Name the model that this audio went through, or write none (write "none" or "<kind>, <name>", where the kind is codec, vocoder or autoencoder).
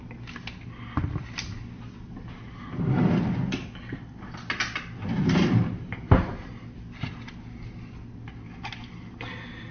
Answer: none